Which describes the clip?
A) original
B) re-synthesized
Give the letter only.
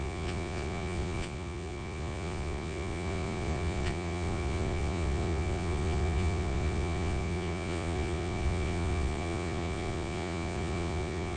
B